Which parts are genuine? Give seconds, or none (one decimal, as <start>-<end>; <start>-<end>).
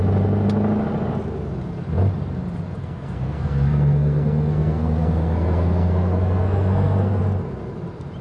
0.0-2.8; 7.2-8.2